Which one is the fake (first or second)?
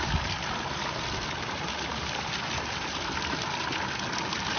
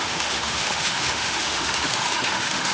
second